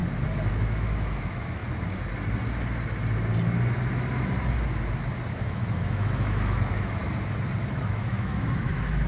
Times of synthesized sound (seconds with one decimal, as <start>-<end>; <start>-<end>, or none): 0.5-1.6; 5.3-7.0; 7.6-9.1